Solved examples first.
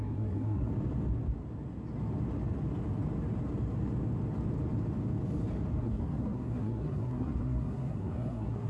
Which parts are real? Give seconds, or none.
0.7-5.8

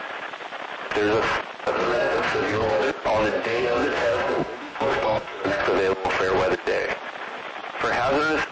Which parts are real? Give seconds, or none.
0.0-1.7; 2.9-3.3; 5.6-8.5